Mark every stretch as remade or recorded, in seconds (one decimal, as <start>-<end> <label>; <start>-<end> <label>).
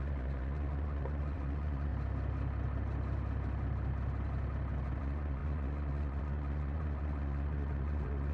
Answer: 0.0-1.9 remade; 1.9-5.0 recorded; 5.0-8.3 remade